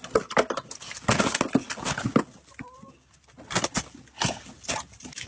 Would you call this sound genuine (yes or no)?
yes